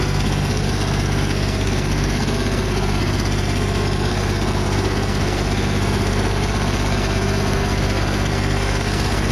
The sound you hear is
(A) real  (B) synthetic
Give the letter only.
B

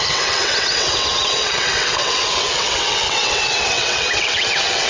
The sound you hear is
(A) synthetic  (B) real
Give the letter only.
A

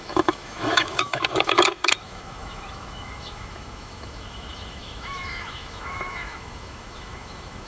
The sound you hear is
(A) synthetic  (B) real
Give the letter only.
A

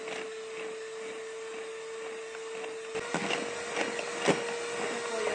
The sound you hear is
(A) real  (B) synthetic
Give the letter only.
A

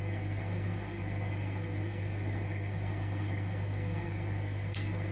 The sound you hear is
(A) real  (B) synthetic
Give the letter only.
B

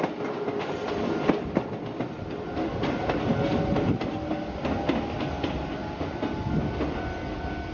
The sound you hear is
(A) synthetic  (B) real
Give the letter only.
B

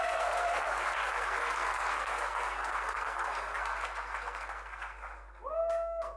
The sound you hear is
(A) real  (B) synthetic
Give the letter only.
B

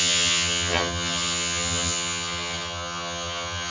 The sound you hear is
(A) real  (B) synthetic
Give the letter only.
B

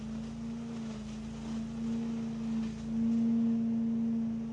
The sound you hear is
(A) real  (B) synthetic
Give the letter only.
A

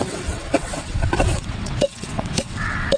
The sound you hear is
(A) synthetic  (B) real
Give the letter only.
A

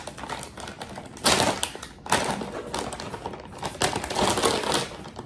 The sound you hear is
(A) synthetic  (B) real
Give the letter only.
B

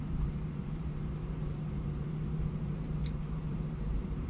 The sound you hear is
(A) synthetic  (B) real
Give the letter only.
A